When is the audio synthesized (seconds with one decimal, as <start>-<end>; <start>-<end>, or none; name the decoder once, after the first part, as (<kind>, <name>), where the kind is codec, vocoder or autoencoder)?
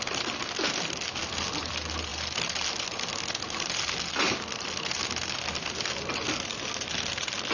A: none